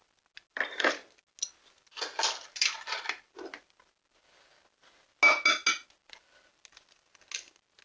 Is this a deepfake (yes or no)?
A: no